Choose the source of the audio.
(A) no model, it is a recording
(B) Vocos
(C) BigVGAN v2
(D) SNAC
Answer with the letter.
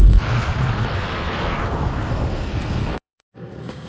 D